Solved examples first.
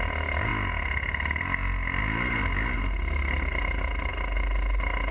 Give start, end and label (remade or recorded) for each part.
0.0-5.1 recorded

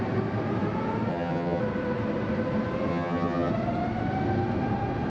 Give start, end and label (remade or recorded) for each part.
0.0-1.1 recorded; 1.1-1.6 remade; 1.6-2.9 recorded; 2.9-3.5 remade; 3.5-5.1 recorded

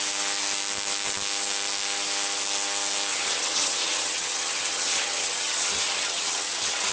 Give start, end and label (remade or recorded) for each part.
0.0-3.1 recorded; 3.1-6.9 remade

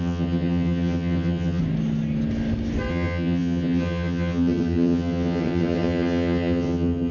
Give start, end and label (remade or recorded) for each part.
0.0-1.6 remade; 1.6-2.9 recorded; 2.9-7.1 remade

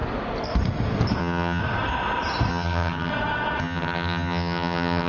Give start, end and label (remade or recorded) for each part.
0.0-1.2 recorded; 1.2-1.6 remade; 1.6-2.5 recorded; 2.5-3.1 remade; 3.1-3.6 recorded; 3.6-5.1 remade

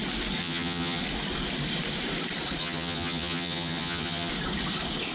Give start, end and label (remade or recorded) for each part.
0.0-0.4 recorded; 0.4-1.0 remade; 1.0-2.6 recorded; 2.6-4.3 remade; 4.3-5.1 recorded